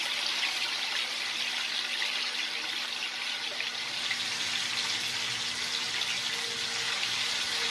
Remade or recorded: recorded